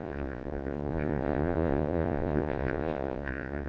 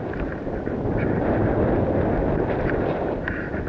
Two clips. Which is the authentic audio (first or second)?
second